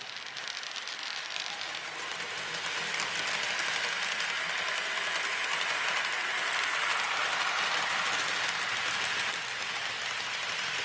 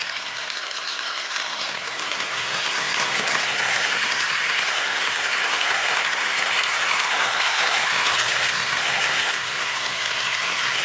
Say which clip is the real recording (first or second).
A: first